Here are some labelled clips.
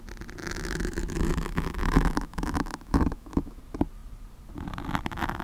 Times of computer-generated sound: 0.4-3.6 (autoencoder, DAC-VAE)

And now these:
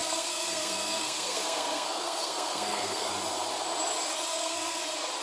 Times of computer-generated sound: 0.0-3.1 (codec, SNAC); 4.3-4.8